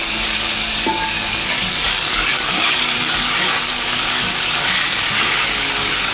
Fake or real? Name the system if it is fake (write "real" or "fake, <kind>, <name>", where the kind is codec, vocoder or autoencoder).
fake, codec, DAC